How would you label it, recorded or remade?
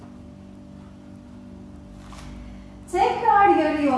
recorded